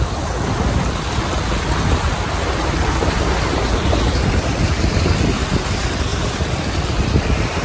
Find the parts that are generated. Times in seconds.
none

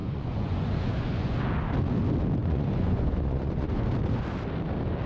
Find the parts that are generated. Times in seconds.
0.0-1.4 (vocoder, Vocos); 2.4-3.9

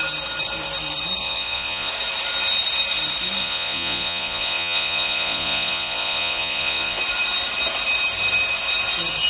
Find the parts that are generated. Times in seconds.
1.2-1.9 (vocoder, Vocos); 3.4-7.0

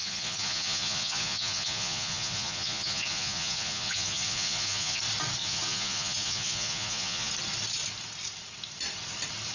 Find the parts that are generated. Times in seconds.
0.0-5.0 (vocoder, Vocos); 5.4-7.3